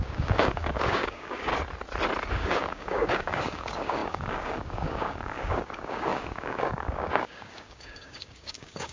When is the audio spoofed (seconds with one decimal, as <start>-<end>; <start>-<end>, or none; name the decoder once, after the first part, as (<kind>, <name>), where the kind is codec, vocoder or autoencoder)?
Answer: 0.0-1.5 (codec, DAC); 2.3-8.9